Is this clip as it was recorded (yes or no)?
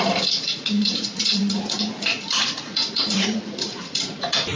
no